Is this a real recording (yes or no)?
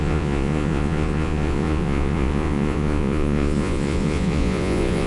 no